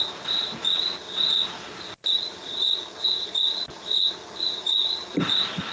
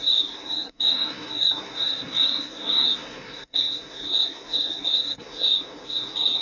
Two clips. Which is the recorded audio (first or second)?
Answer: first